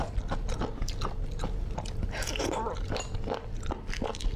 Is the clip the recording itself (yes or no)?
yes